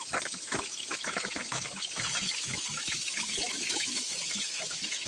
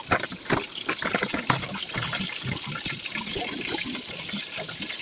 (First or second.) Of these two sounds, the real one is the second